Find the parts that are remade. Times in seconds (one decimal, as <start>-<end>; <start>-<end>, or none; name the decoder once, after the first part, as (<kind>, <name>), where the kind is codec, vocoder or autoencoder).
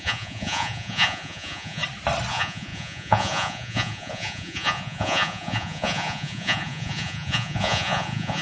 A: 0.0-1.8 (vocoder, Vocos); 2.3-8.4